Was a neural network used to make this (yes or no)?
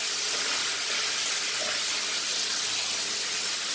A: no